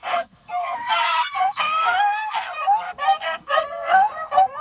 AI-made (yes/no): yes